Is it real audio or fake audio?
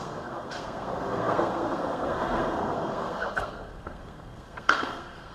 fake